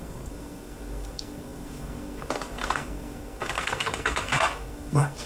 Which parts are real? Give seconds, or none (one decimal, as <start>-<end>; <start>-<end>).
none